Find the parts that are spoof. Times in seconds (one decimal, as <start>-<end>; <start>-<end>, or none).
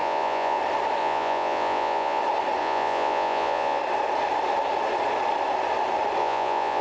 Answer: 0.0-0.6; 1.0-2.2; 2.6-3.8; 6.2-6.8